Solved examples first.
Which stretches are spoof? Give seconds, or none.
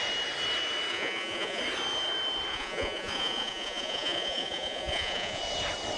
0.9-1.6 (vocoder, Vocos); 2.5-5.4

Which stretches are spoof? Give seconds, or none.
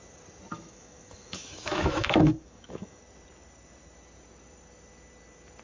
0.5-3.0 (autoencoder, DAC-VAE)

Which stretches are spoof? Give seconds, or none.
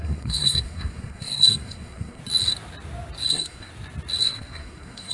0.0-2.2 (codec, SNAC); 3.3-3.7; 4.2-5.1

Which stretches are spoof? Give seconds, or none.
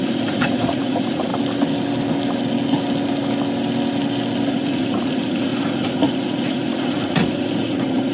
0.0-1.3 (vocoder, Vocos); 4.5-8.1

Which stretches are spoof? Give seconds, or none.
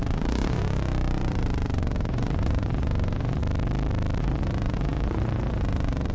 0.0-3.4 (vocoder, Vocos); 4.2-6.1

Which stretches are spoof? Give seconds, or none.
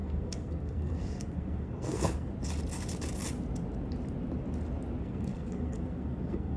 0.0-2.3 (codec, SNAC); 5.0-6.6